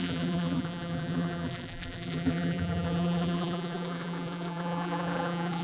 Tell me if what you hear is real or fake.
fake